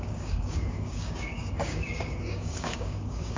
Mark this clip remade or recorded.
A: remade